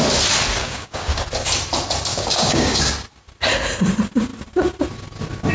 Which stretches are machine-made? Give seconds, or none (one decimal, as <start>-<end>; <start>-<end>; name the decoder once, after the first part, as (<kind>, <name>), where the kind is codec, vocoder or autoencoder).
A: 0.6-1.2 (codec, DAC); 2.1-2.9